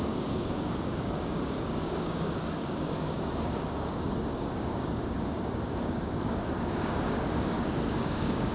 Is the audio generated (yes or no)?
yes